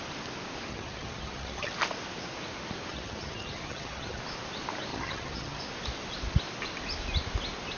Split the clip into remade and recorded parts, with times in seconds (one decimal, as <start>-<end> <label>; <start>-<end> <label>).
0.0-0.7 recorded; 0.7-1.7 remade; 1.7-2.9 recorded; 2.9-4.2 remade; 4.2-4.9 recorded; 4.9-5.6 remade; 5.6-7.8 recorded